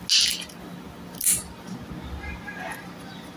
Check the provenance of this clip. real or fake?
real